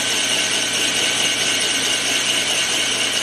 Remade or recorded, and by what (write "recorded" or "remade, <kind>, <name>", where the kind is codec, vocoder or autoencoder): recorded